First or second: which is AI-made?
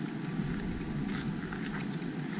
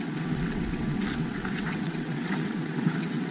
second